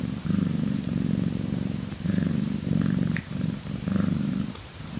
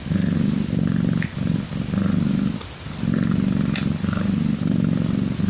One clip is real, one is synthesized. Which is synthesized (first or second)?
first